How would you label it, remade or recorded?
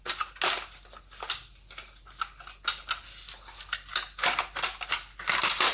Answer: recorded